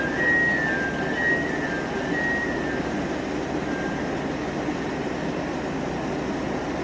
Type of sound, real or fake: real